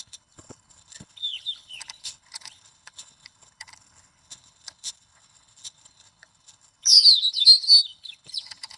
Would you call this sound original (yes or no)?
no